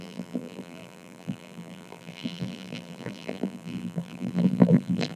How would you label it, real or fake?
fake